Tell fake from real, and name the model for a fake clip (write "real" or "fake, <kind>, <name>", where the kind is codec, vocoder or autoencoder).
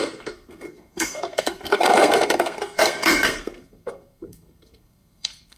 fake, codec, SNAC